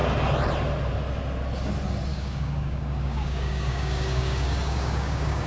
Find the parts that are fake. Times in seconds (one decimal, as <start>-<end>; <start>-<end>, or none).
2.1-5.5